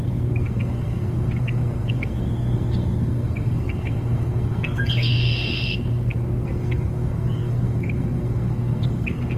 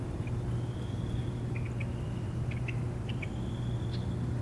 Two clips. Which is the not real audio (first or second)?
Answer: first